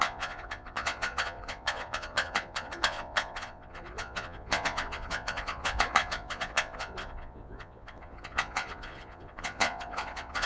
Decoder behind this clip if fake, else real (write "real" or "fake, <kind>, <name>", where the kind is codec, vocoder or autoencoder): fake, vocoder, Vocos